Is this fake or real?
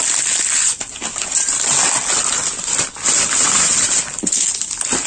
real